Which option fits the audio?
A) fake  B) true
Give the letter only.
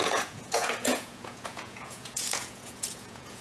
A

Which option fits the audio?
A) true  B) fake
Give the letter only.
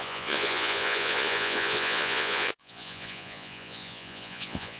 B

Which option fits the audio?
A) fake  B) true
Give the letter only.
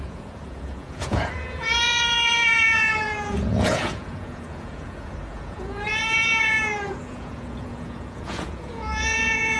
A